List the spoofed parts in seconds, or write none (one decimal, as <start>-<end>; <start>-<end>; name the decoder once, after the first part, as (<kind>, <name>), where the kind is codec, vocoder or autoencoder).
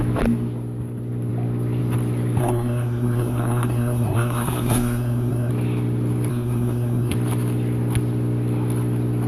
2.4-5.5 (codec, SNAC); 6.3-7.1